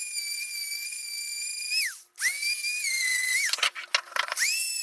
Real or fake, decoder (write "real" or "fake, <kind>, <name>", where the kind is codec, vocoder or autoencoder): real